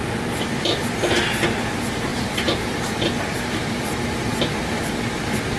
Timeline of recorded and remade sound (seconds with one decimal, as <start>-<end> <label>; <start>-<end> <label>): 0.0-2.1 recorded; 2.1-3.9 remade; 3.9-4.3 recorded; 4.3-4.8 remade; 4.8-5.6 recorded